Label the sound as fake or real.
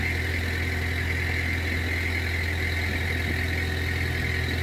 real